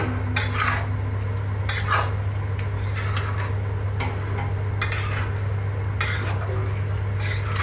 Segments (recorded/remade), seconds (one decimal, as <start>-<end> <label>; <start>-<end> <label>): 0.0-7.6 recorded